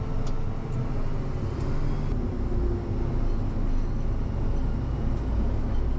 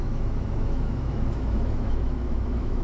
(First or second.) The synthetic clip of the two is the second